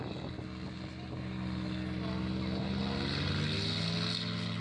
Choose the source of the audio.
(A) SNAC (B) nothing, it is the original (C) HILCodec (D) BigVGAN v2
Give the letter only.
B